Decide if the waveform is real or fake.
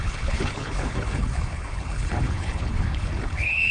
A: fake